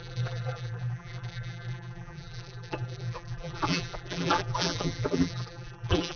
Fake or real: fake